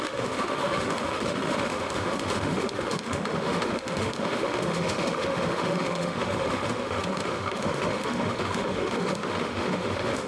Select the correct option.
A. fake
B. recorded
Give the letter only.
A